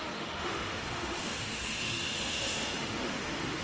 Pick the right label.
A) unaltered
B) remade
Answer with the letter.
B